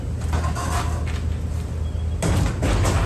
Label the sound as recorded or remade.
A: recorded